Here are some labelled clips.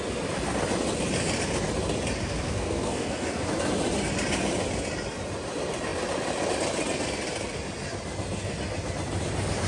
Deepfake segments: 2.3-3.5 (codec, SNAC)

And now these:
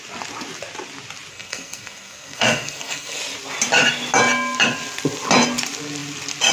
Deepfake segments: 1.3-3.2 (codec, SNAC)

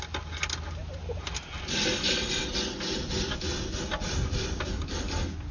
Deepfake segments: none